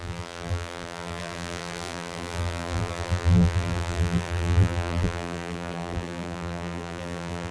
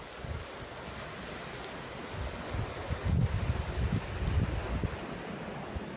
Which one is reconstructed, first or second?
first